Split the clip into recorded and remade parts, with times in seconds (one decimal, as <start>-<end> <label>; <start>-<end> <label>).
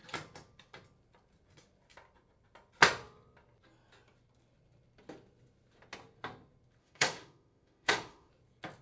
0.0-6.8 recorded; 6.8-8.3 remade; 8.3-8.8 recorded